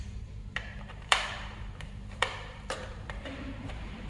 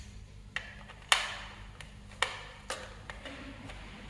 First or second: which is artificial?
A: first